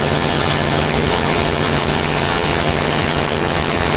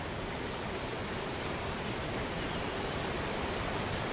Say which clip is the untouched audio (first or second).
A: second